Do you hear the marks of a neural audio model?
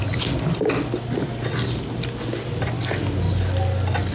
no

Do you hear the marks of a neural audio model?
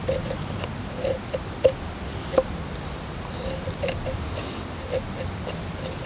no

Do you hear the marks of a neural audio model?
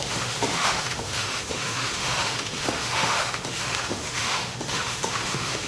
yes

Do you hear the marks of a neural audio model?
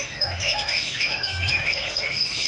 yes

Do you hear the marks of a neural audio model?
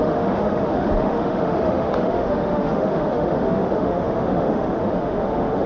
yes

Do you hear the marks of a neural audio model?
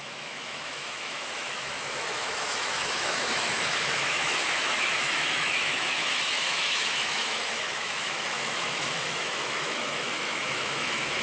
yes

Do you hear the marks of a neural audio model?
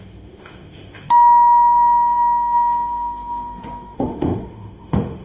yes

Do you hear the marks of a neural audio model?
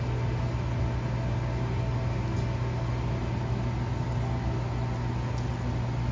no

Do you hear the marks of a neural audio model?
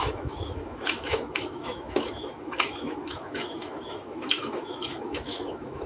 yes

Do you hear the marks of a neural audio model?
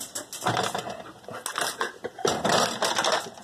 no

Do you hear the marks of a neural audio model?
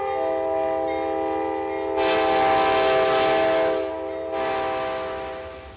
no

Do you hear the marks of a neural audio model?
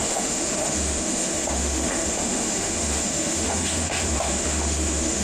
yes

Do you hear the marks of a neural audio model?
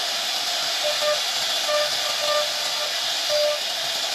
no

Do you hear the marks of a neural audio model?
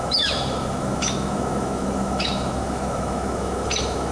yes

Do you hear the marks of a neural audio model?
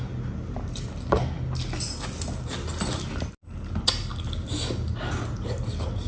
no